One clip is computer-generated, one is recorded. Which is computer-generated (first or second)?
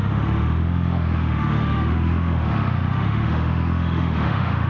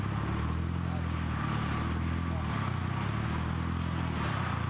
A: first